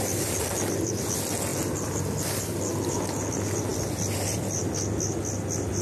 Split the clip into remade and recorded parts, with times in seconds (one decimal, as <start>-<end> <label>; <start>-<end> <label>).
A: 0.0-5.8 recorded